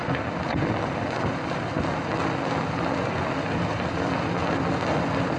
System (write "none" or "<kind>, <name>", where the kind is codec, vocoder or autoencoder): none